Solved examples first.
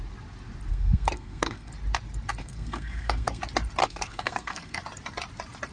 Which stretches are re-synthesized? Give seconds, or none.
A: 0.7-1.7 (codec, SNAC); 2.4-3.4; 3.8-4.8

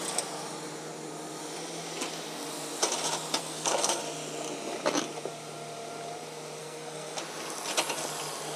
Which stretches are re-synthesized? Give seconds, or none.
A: 3.4-4.0 (codec, SNAC); 6.6-7.2

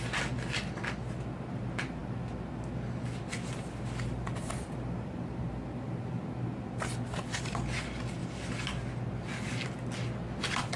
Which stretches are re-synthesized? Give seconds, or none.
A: none

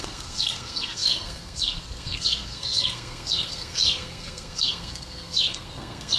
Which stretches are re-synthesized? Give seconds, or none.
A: 0.0-6.2 (codec, SNAC)

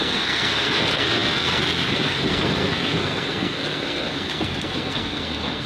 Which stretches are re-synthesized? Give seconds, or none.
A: 0.0-5.7 (codec, SNAC)

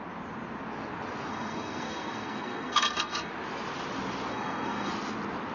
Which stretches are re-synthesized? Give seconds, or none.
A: 1.3-3.3 (codec, SNAC); 4.3-4.9

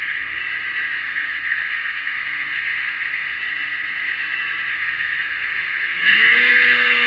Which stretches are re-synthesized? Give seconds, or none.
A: 0.0-0.4 (codec, SNAC); 1.0-3.4; 4.7-7.1